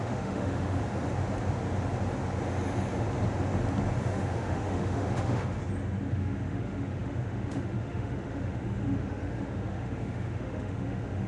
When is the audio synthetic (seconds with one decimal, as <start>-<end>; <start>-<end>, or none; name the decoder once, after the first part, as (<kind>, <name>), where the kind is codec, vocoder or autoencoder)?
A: 0.0-0.8 (autoencoder, DAC-VAE); 4.0-5.6; 6.1-11.3